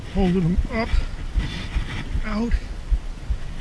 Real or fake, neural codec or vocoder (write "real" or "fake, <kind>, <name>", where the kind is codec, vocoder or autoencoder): real